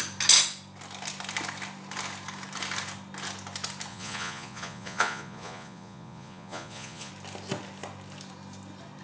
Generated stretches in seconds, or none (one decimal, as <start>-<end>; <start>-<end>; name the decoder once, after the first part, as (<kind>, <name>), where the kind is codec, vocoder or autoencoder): 3.9-7.1 (vocoder, Vocos)